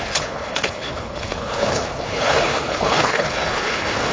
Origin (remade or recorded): remade